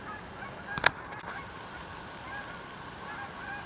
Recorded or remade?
remade